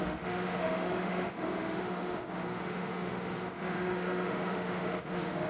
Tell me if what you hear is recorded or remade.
remade